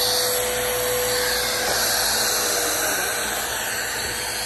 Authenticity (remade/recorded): recorded